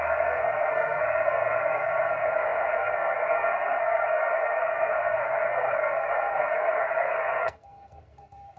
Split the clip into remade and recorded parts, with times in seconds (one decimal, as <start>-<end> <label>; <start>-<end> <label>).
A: 0.0-8.6 remade